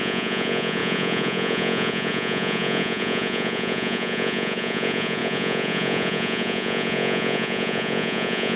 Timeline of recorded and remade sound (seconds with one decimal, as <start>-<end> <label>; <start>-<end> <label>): 0.0-8.6 remade